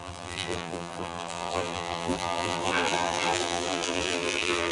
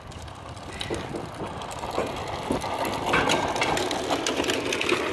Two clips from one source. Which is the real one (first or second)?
second